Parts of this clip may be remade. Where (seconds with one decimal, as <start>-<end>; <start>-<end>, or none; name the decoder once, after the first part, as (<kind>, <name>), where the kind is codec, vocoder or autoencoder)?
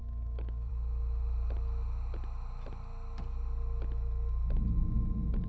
0.0-0.7 (codec, DAC)